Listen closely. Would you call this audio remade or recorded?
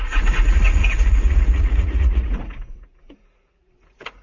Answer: remade